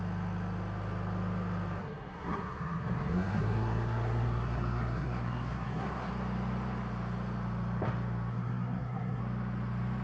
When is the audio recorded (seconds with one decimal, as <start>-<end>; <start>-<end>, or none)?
0.0-1.8; 6.1-8.3; 9.2-10.0